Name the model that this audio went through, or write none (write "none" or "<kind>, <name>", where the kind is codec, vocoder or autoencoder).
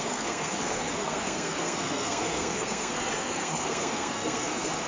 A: codec, SNAC